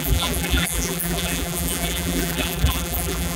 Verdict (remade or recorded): remade